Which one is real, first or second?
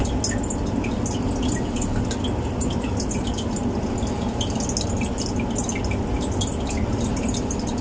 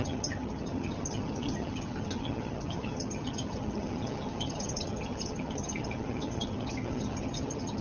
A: first